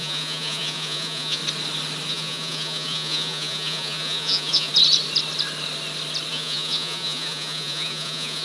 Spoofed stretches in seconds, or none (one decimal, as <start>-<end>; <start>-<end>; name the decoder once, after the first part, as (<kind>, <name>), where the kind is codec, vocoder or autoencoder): 0.0-1.4 (vocoder, Vocos); 2.1-4.7; 6.3-8.4